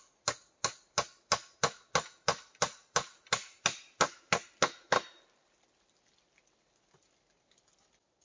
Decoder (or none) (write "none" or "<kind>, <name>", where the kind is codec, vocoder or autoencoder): none